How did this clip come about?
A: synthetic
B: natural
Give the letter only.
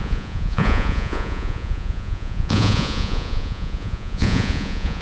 A